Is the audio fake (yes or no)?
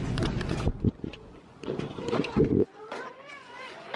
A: yes